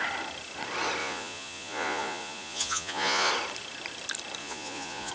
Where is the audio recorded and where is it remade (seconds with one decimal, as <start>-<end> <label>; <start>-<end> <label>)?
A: 0.0-1.0 recorded; 1.0-3.3 remade; 3.3-4.4 recorded; 4.4-5.1 remade